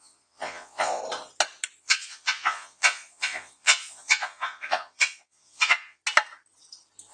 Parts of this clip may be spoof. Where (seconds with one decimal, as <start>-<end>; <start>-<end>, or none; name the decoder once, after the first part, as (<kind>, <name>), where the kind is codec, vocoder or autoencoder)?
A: 0.0-1.0 (vocoder, Vocos); 1.8-6.0